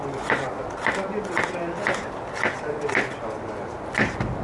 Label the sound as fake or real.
real